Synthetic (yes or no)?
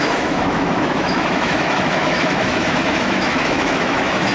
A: yes